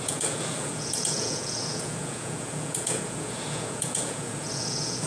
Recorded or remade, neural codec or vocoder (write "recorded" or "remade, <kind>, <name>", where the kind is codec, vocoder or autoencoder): remade, vocoder, Vocos